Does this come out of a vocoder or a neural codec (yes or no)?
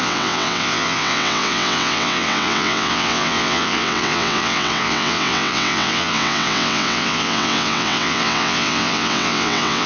yes